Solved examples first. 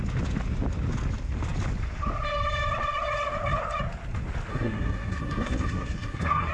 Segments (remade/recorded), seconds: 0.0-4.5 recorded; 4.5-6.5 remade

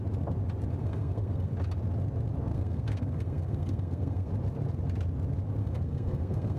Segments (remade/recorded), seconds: 0.0-0.8 recorded; 0.8-1.5 remade; 1.5-2.5 recorded; 2.5-4.3 remade; 4.3-5.6 recorded; 5.6-6.6 remade

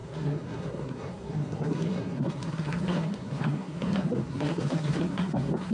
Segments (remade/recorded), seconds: 0.0-5.7 remade

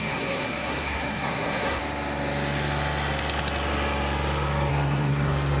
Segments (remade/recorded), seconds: 0.0-1.8 remade; 1.8-4.7 recorded; 4.7-5.6 remade